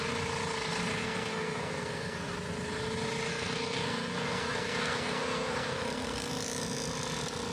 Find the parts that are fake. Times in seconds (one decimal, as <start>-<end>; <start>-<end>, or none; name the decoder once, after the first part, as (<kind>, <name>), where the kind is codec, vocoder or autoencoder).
1.0-2.3 (codec, SNAC); 3.3-6.3

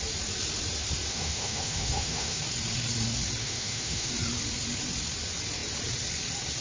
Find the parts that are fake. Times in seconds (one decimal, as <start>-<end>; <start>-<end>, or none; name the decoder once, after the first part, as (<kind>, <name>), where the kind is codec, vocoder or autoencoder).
1.1-2.4 (autoencoder, DAC-VAE); 3.4-4.1

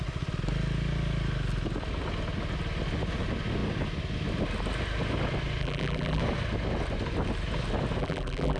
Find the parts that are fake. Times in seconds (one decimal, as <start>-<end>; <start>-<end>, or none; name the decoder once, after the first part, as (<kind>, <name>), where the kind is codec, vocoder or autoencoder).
5.6-6.2 (vocoder, BigVGAN v2); 8.0-8.6

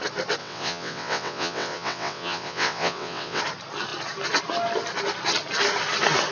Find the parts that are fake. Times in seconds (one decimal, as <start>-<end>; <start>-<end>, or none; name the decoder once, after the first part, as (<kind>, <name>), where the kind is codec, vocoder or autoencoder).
0.4-3.4 (vocoder, WaveNeXt)